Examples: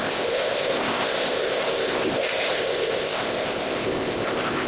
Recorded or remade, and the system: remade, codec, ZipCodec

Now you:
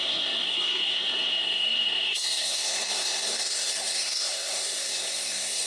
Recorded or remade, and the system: remade, codec, SNAC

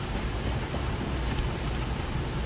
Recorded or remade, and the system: recorded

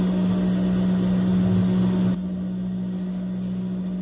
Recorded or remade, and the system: recorded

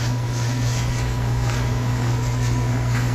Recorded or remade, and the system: remade, codec, SNAC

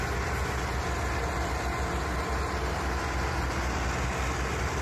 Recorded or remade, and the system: recorded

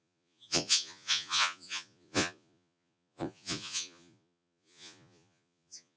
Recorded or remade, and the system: remade, vocoder, Vocos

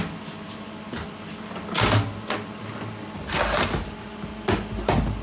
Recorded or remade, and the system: recorded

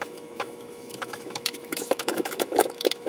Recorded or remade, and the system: remade, autoencoder, DAC-VAE